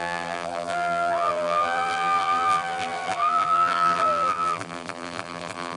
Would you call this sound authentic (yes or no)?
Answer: no